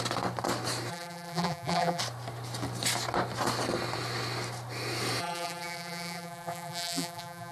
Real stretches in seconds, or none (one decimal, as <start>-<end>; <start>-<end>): 0.0-0.9; 2.0-5.2